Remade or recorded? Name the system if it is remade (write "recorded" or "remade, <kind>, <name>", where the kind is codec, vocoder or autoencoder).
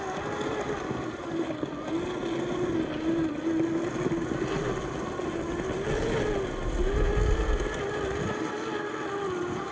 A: recorded